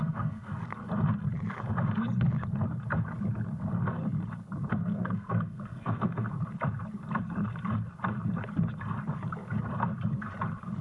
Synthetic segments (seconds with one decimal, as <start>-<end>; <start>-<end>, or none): 0.0-0.5; 4.7-6.3